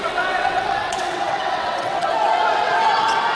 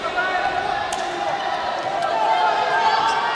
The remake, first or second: first